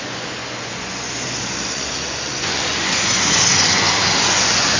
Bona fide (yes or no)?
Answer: no